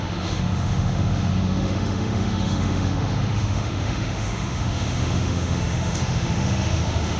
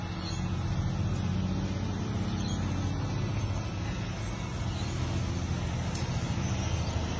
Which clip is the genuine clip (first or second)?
second